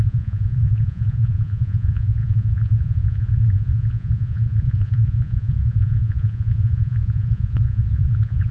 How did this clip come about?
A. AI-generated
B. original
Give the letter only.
A